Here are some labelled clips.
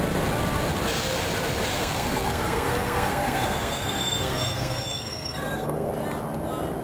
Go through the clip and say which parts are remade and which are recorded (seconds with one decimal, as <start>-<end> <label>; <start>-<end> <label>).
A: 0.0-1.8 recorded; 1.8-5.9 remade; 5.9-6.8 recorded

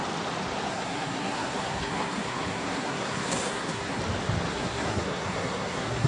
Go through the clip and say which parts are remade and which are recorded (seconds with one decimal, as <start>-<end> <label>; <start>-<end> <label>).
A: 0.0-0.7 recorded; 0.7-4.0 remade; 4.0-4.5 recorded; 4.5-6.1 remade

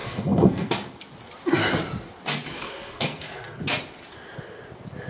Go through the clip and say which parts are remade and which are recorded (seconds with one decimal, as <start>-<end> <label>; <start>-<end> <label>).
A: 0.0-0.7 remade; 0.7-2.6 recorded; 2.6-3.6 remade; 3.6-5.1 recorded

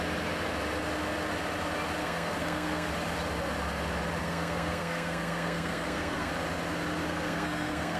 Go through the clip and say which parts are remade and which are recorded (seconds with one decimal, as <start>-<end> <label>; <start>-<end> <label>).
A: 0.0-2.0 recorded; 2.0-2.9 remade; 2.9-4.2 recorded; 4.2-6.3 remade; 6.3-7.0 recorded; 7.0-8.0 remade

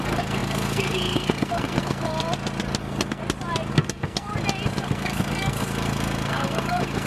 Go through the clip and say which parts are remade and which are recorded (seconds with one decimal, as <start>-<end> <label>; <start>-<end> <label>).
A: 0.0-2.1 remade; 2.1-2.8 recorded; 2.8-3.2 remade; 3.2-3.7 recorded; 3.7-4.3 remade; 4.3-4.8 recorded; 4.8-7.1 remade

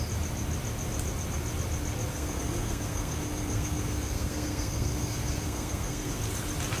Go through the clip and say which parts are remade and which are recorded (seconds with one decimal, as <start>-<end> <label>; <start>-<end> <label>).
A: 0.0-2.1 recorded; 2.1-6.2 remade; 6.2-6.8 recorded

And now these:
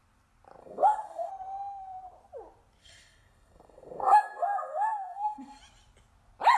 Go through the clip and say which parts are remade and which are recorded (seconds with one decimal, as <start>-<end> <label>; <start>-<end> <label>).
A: 0.0-0.6 recorded; 0.6-1.3 remade; 1.3-2.8 recorded; 2.8-5.6 remade; 5.6-6.6 recorded